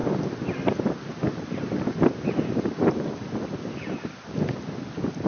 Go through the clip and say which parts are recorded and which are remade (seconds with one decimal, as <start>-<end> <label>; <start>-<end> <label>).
0.0-5.3 recorded